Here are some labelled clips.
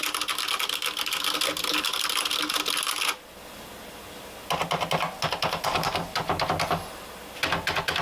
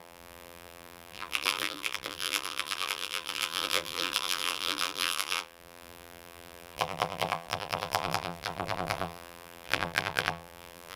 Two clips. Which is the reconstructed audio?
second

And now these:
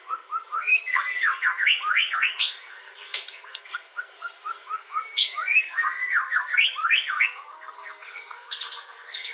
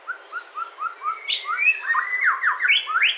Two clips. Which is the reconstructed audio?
first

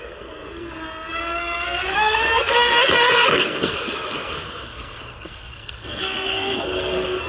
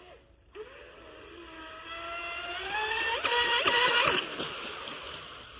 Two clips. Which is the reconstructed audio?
first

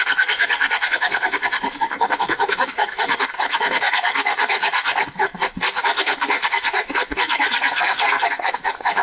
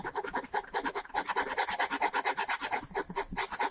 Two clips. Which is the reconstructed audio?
first